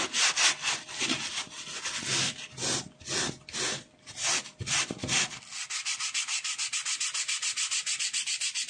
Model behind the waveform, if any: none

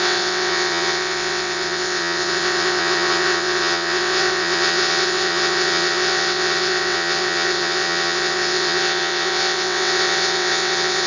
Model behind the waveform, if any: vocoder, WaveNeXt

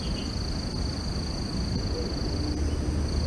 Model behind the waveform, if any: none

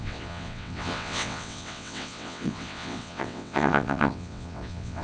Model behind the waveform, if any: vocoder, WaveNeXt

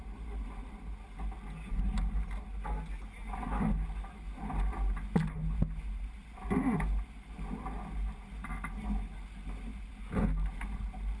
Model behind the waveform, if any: none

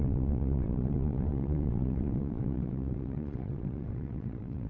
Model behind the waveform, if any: vocoder, WaveNeXt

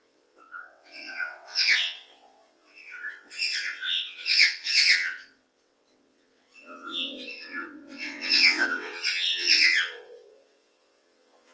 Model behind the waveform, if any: vocoder, WaveNeXt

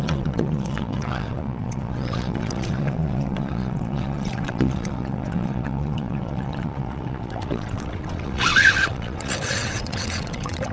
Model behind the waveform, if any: vocoder, WaveNeXt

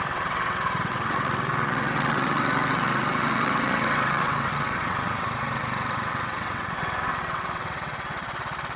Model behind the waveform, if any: vocoder, WaveNeXt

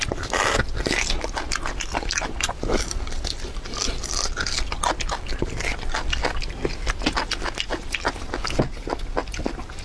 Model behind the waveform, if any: none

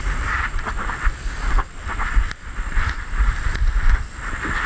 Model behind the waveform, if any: none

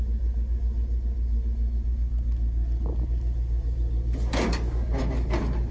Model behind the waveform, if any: none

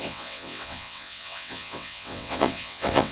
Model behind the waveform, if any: vocoder, WaveNeXt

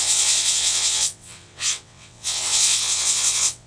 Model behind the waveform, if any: vocoder, WaveNeXt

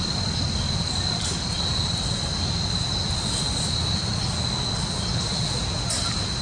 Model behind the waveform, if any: none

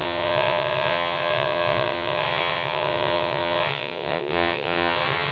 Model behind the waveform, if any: vocoder, WaveNeXt